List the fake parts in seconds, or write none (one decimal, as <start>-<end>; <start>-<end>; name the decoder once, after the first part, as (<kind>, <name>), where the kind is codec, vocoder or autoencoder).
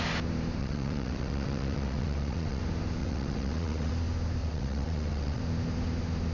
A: 0.6-2.6 (vocoder, WaveNeXt); 3.0-3.9; 4.4-5.4